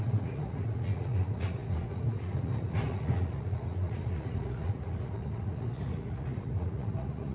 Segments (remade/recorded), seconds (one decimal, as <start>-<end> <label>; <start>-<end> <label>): 0.0-7.3 remade